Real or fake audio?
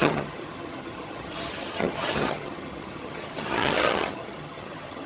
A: fake